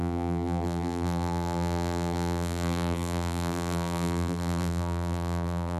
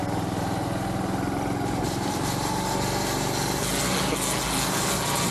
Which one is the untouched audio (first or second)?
second